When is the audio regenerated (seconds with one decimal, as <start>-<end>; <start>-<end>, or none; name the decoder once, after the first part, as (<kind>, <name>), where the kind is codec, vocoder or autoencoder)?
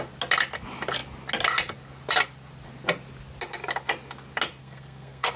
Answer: 4.6-5.4 (codec, SNAC)